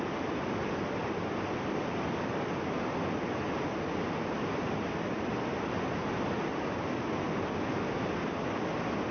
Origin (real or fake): real